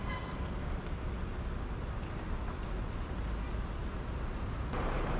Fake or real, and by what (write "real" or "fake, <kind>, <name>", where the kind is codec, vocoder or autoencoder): real